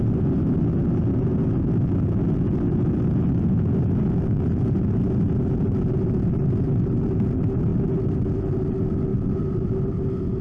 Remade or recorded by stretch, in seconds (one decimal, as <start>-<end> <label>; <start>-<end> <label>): 0.0-10.4 recorded